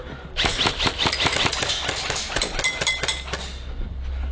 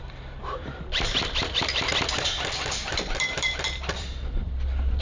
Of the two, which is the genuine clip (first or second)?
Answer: first